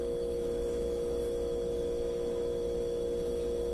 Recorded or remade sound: remade